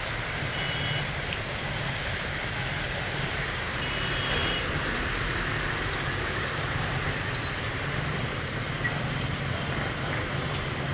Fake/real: fake